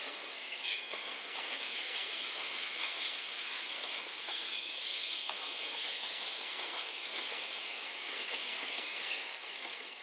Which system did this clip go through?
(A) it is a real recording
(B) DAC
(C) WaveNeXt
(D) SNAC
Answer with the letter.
D